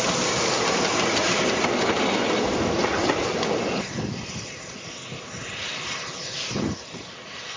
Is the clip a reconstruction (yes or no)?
no